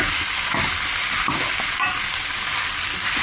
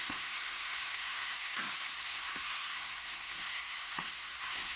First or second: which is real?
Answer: first